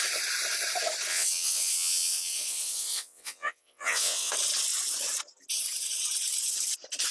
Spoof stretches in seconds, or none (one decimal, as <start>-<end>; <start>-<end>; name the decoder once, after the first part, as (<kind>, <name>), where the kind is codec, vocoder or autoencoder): 1.1-4.3 (vocoder, WaveNeXt)